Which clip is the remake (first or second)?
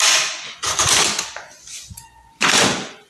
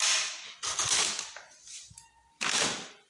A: first